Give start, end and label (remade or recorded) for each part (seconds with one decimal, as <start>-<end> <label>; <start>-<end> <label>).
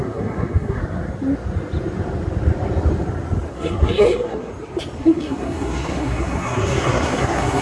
0.0-0.8 remade; 0.8-3.5 recorded; 3.5-4.5 remade; 4.5-5.0 recorded; 5.0-7.6 remade